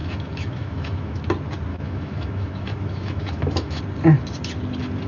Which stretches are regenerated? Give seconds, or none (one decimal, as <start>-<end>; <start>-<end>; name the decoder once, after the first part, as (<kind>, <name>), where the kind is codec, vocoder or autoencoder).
0.0-1.2 (autoencoder, DAC-VAE); 1.7-3.8